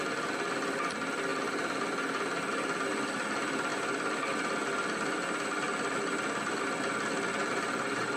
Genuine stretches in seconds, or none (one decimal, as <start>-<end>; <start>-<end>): 0.0-7.4